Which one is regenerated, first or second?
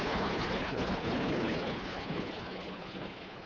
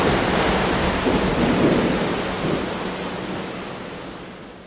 first